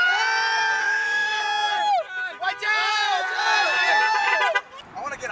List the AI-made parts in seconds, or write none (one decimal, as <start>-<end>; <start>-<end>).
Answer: 0.8-1.4